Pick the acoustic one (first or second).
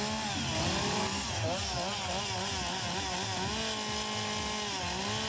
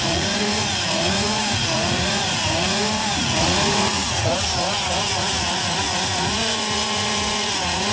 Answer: first